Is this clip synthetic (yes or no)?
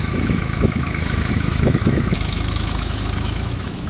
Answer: yes